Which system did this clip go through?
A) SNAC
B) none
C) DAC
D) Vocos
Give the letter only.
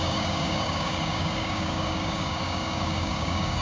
C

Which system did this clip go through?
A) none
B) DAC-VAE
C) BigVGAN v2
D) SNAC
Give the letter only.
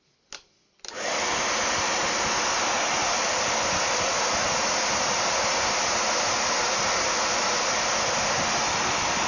A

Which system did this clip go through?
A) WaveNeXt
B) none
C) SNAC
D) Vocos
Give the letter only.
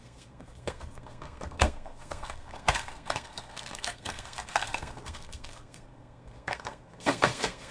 C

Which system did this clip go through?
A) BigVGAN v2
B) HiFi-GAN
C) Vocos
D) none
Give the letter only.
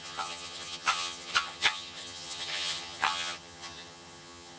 B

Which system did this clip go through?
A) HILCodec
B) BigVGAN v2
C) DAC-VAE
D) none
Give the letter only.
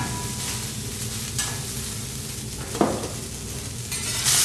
D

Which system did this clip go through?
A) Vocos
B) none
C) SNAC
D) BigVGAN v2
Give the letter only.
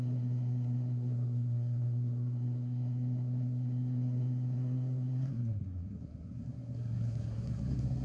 C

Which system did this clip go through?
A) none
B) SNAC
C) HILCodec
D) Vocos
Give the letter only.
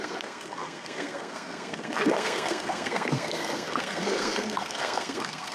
B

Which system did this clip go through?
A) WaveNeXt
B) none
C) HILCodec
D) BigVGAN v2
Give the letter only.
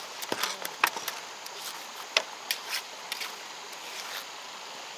B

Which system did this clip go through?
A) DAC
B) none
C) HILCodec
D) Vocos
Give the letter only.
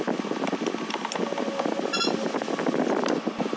B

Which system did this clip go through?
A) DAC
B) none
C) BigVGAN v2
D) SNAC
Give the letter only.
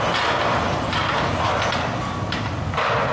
B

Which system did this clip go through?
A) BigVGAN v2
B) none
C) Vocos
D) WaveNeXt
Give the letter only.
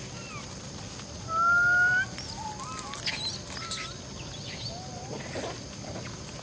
B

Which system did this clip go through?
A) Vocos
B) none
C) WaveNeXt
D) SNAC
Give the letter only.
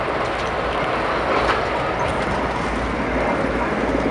B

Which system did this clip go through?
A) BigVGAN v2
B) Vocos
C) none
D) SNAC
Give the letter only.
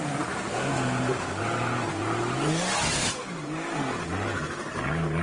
C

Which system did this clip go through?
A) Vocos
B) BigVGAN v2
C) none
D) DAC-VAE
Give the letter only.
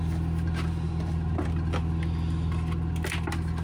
C